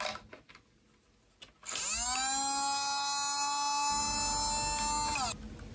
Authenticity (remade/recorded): recorded